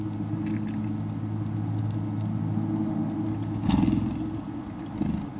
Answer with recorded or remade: recorded